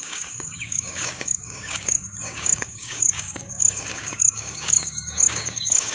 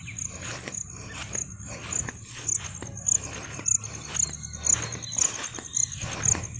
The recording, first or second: second